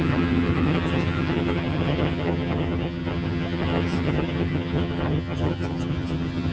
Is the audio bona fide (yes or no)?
no